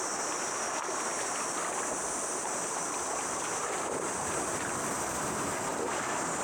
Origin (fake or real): real